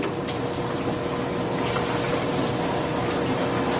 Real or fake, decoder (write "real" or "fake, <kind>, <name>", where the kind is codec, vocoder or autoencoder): real